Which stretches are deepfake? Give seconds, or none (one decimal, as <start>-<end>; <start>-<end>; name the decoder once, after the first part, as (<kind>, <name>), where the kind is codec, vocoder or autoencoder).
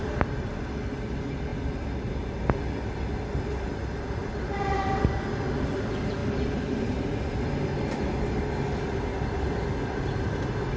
6.2-6.8 (vocoder, BigVGAN v2)